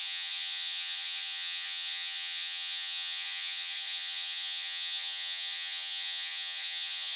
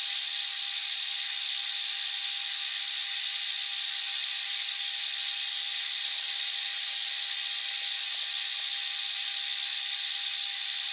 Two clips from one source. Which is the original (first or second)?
second